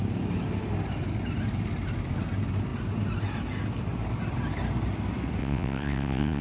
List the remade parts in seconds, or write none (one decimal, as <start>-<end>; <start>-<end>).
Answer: 5.4-6.4